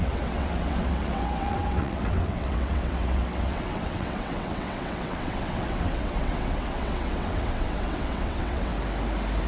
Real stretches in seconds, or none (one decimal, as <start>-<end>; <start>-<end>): 8.7-9.5